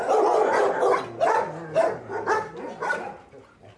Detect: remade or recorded recorded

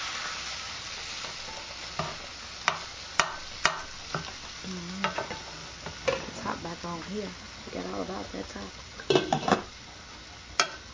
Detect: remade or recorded recorded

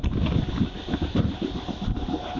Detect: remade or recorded recorded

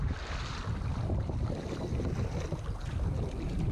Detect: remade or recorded recorded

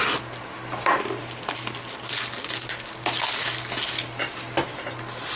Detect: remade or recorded recorded